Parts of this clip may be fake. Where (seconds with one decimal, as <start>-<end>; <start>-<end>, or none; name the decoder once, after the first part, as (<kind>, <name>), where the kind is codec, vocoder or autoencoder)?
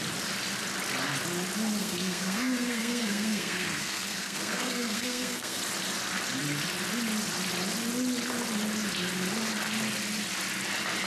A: 1.8-5.6 (codec, SNAC)